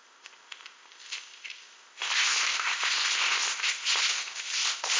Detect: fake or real fake